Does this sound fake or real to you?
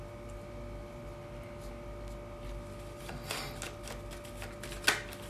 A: real